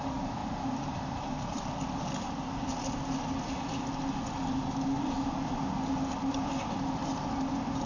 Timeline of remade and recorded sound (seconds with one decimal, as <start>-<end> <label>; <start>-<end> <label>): 0.0-0.4 recorded; 0.4-1.6 remade; 1.6-7.9 recorded